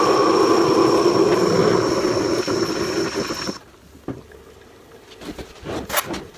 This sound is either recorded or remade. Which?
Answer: recorded